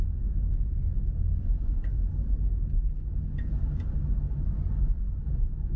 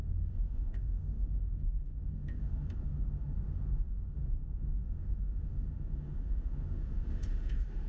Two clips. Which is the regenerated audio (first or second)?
second